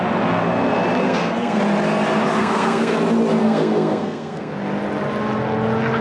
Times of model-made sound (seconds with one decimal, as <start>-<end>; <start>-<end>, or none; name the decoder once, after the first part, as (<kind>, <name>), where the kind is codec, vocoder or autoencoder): 1.0-1.6 (codec, SNAC); 2.4-3.0; 3.4-4.5

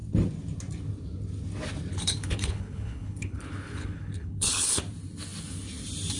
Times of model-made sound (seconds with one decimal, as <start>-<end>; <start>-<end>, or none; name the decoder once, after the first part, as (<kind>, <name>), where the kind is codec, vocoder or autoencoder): 1.9-4.8 (codec, HILCodec)

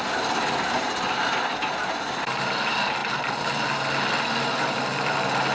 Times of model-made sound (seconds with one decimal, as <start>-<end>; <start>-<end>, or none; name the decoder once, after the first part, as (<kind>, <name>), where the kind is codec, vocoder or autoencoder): none

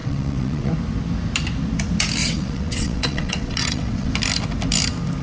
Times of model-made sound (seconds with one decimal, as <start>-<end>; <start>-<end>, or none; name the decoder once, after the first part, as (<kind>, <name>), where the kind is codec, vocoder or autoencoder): 0.0-0.7 (vocoder, WaveNeXt); 2.2-4.1

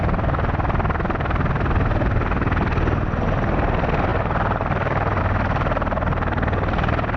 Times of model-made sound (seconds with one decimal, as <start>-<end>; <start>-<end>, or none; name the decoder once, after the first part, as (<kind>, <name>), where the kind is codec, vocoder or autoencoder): none

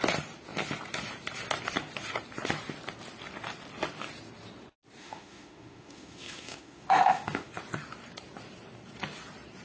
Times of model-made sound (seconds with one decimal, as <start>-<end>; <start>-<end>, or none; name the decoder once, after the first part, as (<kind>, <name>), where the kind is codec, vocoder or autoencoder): 5.0-7.5 (autoencoder, DAC-VAE)